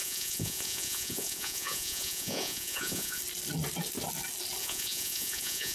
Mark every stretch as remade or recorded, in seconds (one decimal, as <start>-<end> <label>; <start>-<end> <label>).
0.0-3.2 remade; 3.2-4.6 recorded; 4.6-5.7 remade

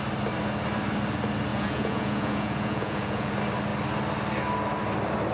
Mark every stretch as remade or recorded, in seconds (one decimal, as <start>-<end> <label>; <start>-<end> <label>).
0.0-1.5 recorded; 1.5-3.3 remade; 3.3-5.3 recorded

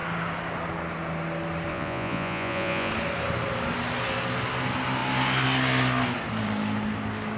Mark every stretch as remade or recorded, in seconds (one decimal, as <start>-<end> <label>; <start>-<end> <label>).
0.0-1.7 recorded; 1.7-2.9 remade; 2.9-7.4 recorded